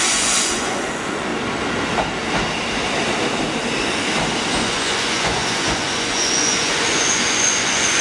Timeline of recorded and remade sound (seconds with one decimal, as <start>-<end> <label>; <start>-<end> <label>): 0.0-1.3 remade; 1.3-4.5 recorded; 4.5-8.0 remade